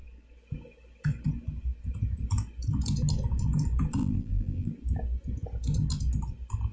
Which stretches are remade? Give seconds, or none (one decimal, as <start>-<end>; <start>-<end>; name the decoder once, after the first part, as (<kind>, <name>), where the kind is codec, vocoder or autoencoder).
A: 4.0-4.7 (vocoder, BigVGAN v2)